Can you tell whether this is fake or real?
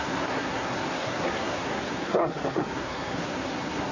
fake